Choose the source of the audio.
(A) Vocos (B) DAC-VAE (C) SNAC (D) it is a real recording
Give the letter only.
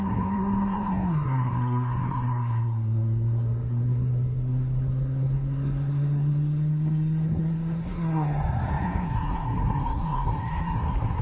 C